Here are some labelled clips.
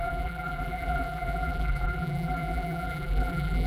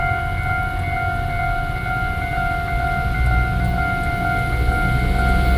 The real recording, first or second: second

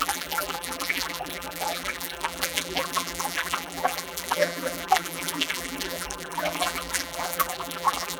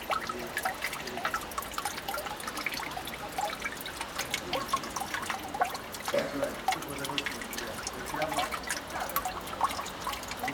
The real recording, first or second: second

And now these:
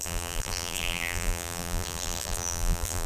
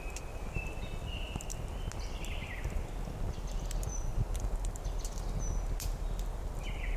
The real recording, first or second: second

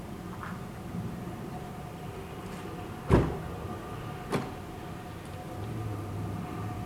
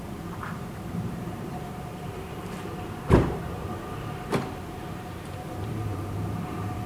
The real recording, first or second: first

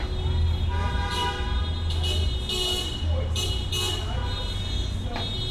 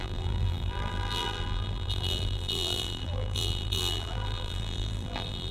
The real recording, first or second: first